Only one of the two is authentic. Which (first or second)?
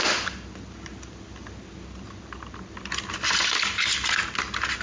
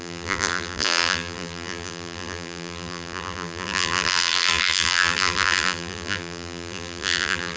first